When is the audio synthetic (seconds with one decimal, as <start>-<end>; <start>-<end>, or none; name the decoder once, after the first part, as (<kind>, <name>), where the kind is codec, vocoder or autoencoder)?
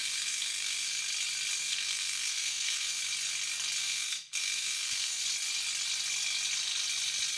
0.0-1.0 (codec, SNAC); 1.6-3.0; 3.8-5.2